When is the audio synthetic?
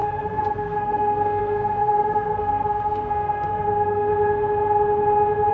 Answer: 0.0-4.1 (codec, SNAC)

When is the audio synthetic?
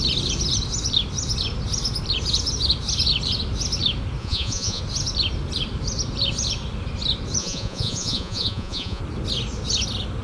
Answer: 4.2-4.8 (vocoder, Vocos); 7.4-9.0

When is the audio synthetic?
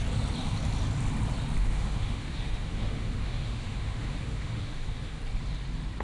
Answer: 1.6-5.2 (autoencoder, DAC-VAE)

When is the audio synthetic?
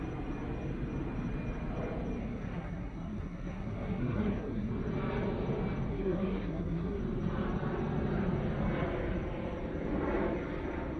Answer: 2.2-4.7 (codec, SNAC); 5.9-7.0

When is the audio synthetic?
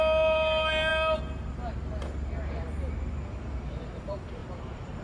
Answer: none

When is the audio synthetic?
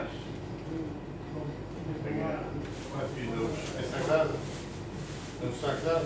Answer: none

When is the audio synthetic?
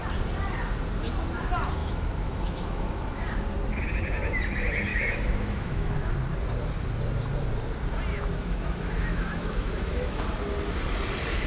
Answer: 1.8-3.2 (autoencoder, DAC-VAE); 4.9-6.1; 8.1-10.2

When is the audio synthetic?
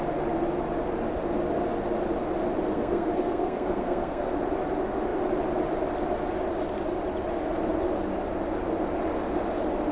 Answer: 2.7-4.3 (codec, SNAC)